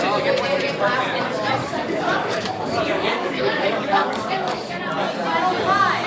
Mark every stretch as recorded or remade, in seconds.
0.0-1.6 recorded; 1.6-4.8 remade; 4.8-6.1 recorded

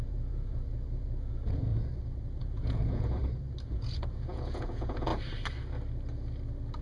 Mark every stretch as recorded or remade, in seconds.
0.0-1.7 remade; 1.7-2.4 recorded; 2.4-3.2 remade; 3.2-3.7 recorded; 3.7-5.1 remade; 5.1-6.8 recorded

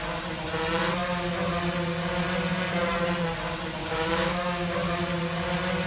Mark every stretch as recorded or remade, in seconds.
0.0-3.8 recorded; 3.8-5.0 remade; 5.0-5.9 recorded

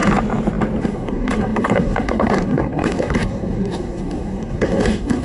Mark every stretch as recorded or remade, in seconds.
0.0-0.8 recorded; 0.8-5.2 remade